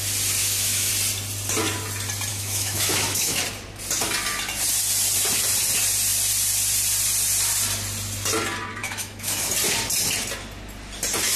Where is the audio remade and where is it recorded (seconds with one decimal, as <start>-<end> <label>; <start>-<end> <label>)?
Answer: 0.0-0.4 recorded; 0.4-0.9 remade; 0.9-2.3 recorded; 2.3-3.4 remade; 3.4-8.8 recorded; 8.8-9.5 remade; 9.5-11.4 recorded